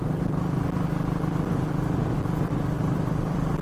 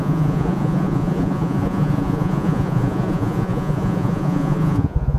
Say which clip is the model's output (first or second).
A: second